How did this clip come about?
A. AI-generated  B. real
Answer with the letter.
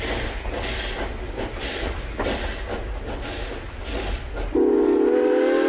B